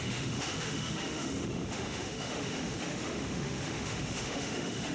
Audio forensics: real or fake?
fake